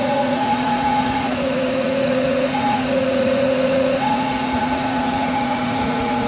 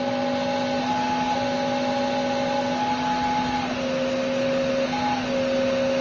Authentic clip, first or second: second